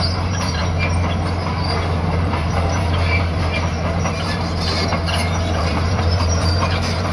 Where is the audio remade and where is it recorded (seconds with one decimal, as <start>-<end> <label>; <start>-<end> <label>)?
0.0-0.6 remade; 0.6-1.8 recorded; 1.8-4.9 remade; 4.9-5.6 recorded; 5.6-7.1 remade